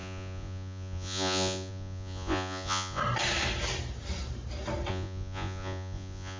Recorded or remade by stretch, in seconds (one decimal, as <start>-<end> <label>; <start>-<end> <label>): 0.0-3.0 remade; 3.0-4.9 recorded; 4.9-6.4 remade